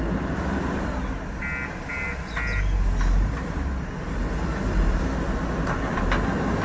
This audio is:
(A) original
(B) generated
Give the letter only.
A